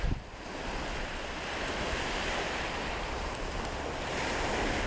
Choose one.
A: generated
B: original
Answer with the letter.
A